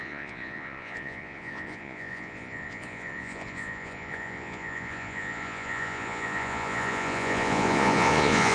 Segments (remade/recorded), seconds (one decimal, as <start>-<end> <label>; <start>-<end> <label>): 0.0-8.5 remade